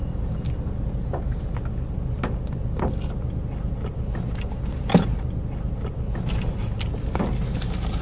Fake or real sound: real